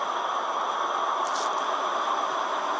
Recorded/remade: recorded